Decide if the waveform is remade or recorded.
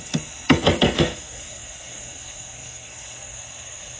remade